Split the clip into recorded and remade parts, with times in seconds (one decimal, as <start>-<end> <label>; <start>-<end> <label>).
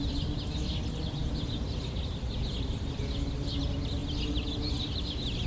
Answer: 0.0-5.5 recorded